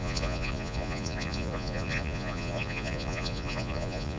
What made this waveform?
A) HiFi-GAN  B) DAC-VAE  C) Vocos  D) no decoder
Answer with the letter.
C